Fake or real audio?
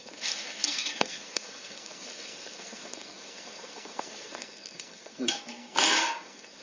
fake